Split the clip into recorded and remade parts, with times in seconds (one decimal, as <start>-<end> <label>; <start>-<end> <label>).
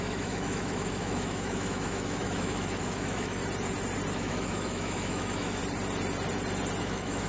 0.0-3.4 remade; 3.4-4.1 recorded; 4.1-5.6 remade; 5.6-6.8 recorded; 6.8-7.3 remade